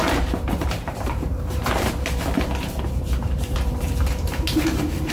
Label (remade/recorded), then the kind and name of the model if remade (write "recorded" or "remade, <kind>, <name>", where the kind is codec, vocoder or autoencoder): remade, vocoder, BigVGAN v2